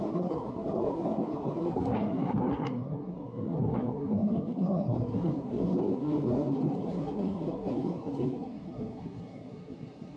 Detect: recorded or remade remade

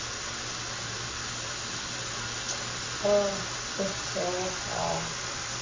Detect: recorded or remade recorded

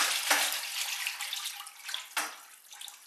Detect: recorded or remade recorded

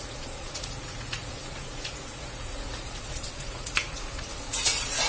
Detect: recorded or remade remade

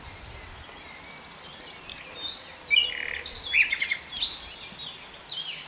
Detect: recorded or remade recorded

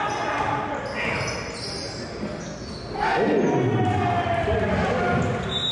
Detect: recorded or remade recorded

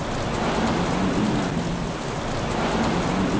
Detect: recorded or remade recorded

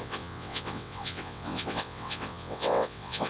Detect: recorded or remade remade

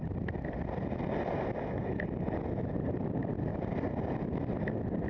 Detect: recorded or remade remade